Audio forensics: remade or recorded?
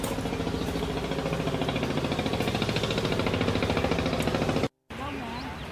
recorded